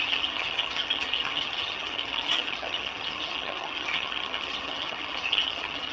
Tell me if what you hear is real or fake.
fake